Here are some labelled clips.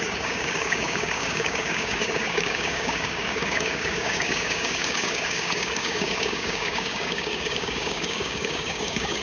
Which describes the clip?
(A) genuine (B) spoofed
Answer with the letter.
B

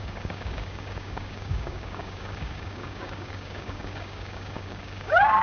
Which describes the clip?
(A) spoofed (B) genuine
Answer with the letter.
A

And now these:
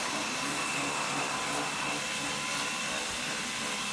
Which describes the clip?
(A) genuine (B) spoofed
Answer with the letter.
A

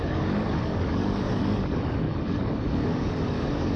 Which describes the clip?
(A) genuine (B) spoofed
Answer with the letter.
B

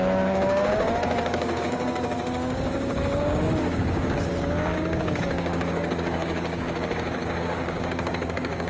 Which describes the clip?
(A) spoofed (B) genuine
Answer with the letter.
A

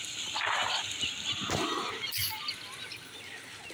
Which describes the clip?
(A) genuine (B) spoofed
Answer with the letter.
A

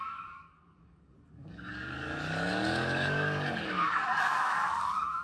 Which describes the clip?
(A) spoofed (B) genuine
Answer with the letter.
A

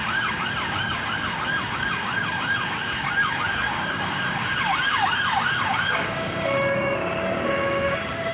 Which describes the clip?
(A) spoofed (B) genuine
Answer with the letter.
A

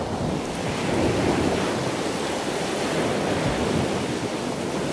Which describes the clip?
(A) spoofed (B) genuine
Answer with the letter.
B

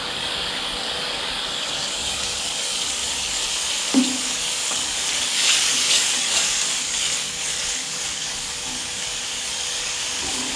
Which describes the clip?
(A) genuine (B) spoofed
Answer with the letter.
B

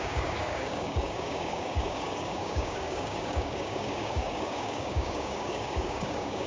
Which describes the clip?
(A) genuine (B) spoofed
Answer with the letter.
B